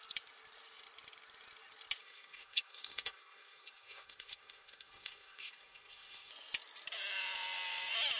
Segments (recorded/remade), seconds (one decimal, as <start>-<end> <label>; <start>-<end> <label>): 0.0-2.0 recorded; 2.0-6.3 remade; 6.3-8.2 recorded